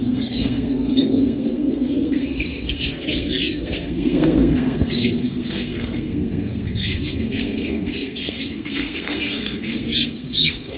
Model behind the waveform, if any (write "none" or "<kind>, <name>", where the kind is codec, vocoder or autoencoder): codec, SNAC